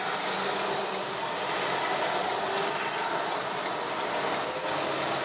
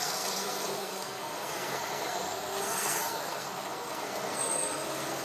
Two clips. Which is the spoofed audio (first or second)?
second